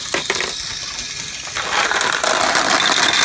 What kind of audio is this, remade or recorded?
recorded